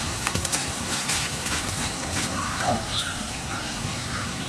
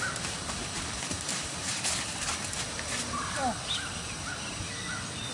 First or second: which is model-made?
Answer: first